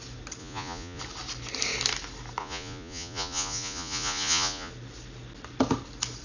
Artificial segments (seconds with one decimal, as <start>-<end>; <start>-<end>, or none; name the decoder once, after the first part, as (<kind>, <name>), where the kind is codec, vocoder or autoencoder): 0.4-1.0 (vocoder, Vocos); 2.4-4.7